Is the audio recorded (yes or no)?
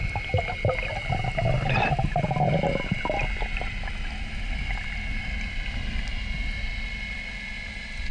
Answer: yes